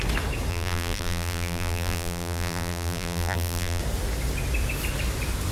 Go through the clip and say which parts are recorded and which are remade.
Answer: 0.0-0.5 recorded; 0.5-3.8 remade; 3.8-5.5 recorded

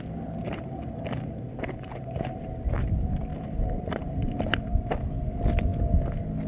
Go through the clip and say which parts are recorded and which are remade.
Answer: 0.0-0.4 recorded; 0.4-2.4 remade; 2.4-3.3 recorded; 3.3-4.9 remade; 4.9-6.5 recorded

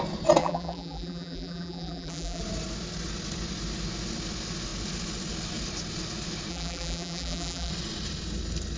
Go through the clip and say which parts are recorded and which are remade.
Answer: 0.0-0.4 recorded; 0.4-2.4 remade; 2.4-6.5 recorded; 6.5-7.7 remade; 7.7-8.8 recorded

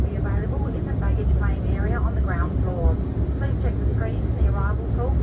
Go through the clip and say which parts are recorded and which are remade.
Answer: 0.0-3.1 remade; 3.1-5.2 recorded

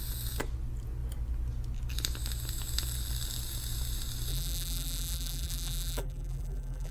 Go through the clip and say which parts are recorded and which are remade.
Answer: 0.0-4.3 recorded; 4.3-6.9 remade

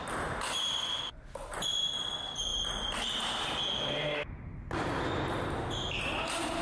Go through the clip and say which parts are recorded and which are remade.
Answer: 0.0-6.6 recorded

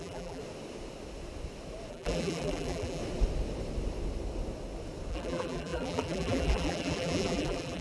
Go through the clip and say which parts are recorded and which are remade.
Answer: 0.0-0.4 remade; 0.4-1.9 recorded; 1.9-3.0 remade; 3.0-5.1 recorded; 5.1-7.8 remade

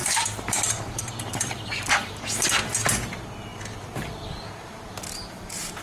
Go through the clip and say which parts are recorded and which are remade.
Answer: 0.0-2.2 remade; 2.2-3.5 recorded; 3.5-5.8 remade